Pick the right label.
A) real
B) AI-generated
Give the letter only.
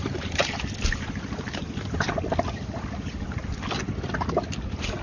A